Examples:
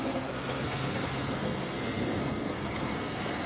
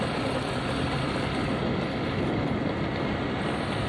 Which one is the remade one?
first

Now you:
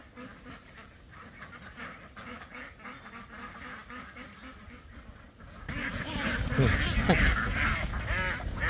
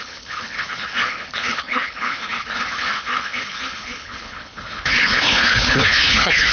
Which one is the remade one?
second